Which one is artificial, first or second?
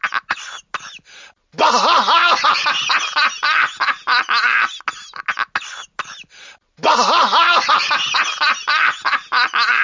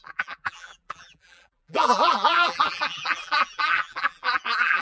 second